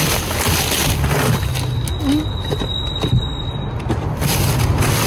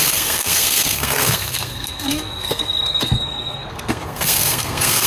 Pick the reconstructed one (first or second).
second